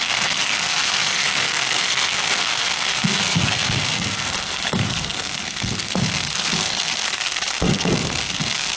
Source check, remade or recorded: remade